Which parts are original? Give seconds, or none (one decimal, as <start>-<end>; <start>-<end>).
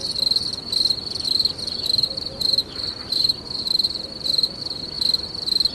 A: 0.0-2.6; 4.8-5.7